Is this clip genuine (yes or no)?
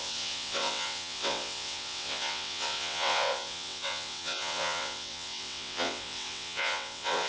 no